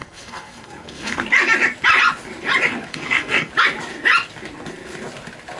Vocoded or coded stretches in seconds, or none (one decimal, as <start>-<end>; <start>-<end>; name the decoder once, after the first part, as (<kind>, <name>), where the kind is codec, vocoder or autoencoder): 0.0-1.2 (codec, SNAC); 2.9-3.5